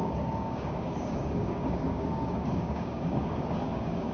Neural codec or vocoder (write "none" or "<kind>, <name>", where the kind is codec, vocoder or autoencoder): codec, DAC